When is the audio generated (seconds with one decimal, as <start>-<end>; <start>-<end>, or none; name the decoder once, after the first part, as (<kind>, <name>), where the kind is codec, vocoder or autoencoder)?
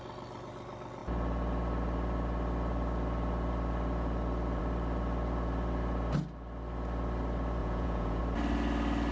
7.6-8.2 (vocoder, Vocos)